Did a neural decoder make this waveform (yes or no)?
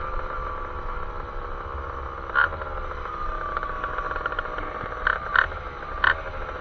no